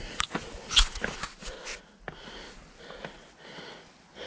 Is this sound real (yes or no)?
yes